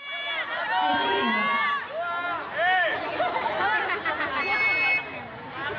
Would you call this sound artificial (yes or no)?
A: no